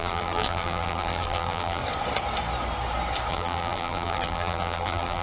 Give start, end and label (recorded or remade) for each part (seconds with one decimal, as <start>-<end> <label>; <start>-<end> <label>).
0.0-1.8 remade; 1.8-3.3 recorded; 3.3-5.2 remade